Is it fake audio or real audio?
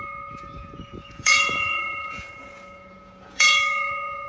fake